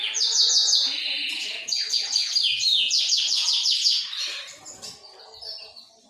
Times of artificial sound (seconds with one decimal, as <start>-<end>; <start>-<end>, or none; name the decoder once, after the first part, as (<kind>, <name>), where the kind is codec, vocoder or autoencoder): 0.0-2.3 (vocoder, Vocos); 2.7-5.2